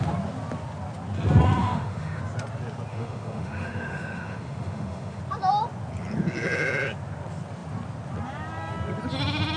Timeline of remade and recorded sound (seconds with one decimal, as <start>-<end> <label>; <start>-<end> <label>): 0.0-1.6 recorded; 1.6-2.2 remade; 2.2-2.9 recorded; 2.9-5.2 remade; 5.2-9.6 recorded